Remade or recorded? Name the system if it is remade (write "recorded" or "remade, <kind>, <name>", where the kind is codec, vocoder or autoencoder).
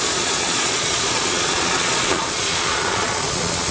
remade, vocoder, Vocos